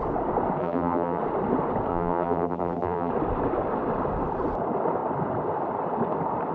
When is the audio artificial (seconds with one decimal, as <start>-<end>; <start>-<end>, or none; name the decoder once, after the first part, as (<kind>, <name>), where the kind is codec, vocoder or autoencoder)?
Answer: 0.6-1.2 (vocoder, BigVGAN v2); 1.9-3.1